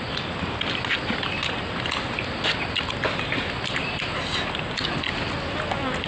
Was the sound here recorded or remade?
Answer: recorded